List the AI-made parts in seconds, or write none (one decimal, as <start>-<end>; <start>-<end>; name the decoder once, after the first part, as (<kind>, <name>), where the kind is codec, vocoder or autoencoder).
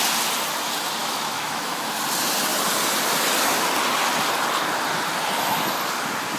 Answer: 1.0-1.9 (autoencoder, DAC-VAE)